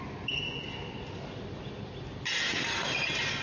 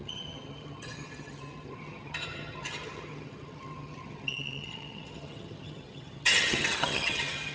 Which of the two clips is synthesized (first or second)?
second